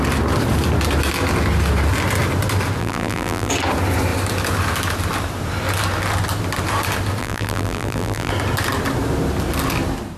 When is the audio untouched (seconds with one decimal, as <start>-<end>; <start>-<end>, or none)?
0.0-2.8; 3.5-7.2; 8.3-10.2